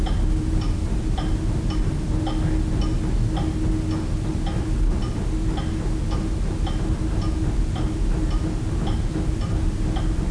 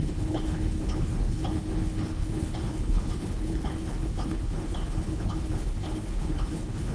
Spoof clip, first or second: second